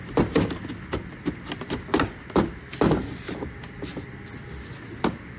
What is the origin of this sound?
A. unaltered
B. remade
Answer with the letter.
A